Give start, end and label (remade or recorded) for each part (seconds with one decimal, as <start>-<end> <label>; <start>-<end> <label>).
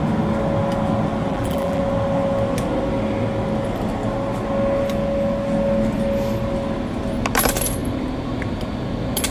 0.0-1.3 recorded; 1.3-1.8 remade; 1.8-9.3 recorded